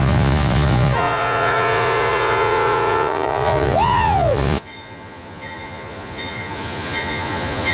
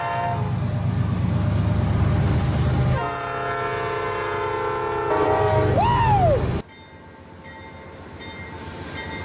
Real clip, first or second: second